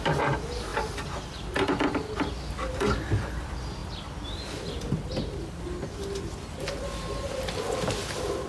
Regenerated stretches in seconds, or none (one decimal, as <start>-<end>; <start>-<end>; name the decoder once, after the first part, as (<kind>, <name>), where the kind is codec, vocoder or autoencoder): none